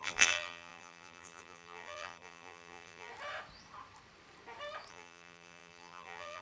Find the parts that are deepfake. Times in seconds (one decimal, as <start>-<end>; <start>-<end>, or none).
0.0-3.1; 4.9-6.4